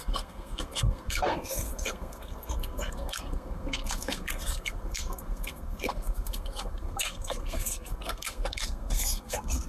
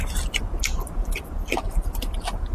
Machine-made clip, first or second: first